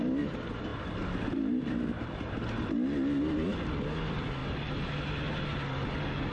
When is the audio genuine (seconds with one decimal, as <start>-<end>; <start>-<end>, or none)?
0.0-6.3